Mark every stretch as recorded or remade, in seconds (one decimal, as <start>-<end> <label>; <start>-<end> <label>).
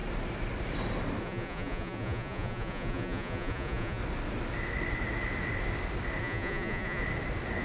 0.0-1.2 recorded; 1.2-4.0 remade; 4.0-6.2 recorded; 6.2-7.0 remade; 7.0-7.6 recorded